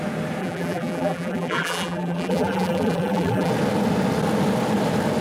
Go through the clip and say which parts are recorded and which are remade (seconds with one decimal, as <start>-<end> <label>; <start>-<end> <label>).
0.0-0.4 recorded; 0.4-3.5 remade; 3.5-5.2 recorded